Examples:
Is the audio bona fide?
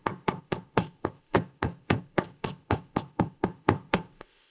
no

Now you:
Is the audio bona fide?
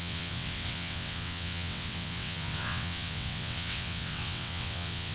no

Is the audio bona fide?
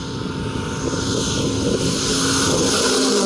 yes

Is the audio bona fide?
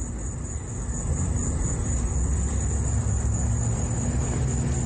yes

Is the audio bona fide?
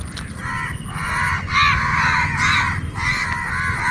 yes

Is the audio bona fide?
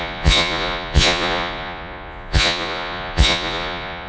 no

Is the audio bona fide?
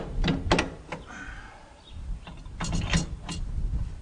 yes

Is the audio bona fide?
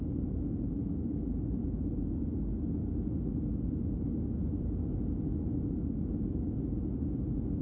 yes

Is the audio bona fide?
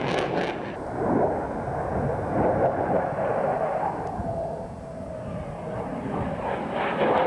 yes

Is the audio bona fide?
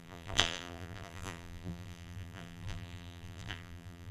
no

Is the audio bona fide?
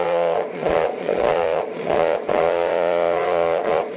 no